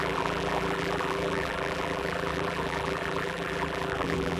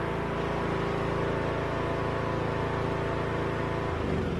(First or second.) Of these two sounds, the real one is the second